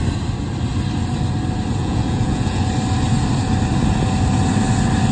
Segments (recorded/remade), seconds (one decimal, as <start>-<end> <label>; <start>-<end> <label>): 0.0-1.8 recorded; 1.8-2.6 remade; 2.6-5.1 recorded